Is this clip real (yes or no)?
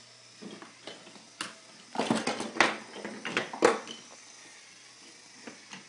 yes